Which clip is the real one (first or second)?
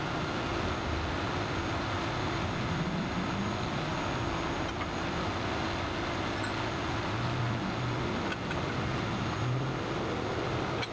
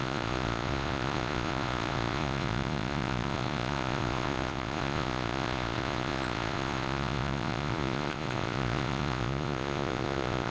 first